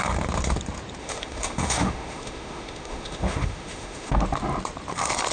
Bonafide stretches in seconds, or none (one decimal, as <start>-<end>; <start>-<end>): 0.0-1.0; 4.2-5.3